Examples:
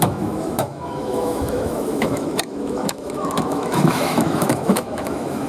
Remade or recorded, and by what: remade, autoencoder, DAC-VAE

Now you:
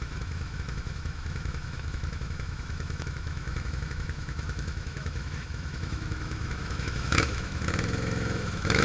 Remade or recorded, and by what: remade, autoencoder, DAC-VAE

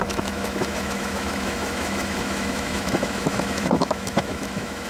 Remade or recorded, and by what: remade, autoencoder, DAC-VAE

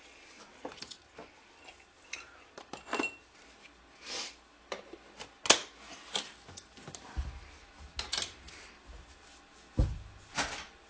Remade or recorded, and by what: recorded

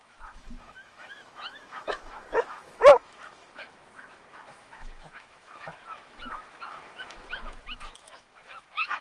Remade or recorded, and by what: remade, autoencoder, DAC-VAE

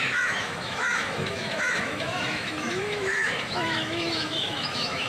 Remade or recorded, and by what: remade, autoencoder, DAC-VAE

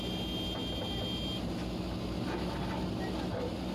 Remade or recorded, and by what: recorded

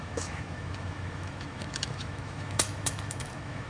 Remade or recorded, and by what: remade, autoencoder, DAC-VAE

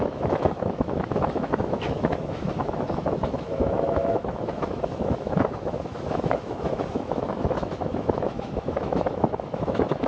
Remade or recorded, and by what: remade, autoencoder, DAC-VAE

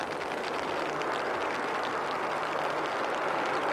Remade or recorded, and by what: recorded